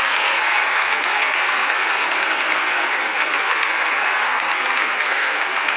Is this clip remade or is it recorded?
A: remade